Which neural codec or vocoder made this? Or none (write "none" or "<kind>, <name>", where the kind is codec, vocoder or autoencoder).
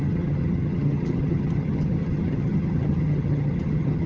vocoder, HiFi-GAN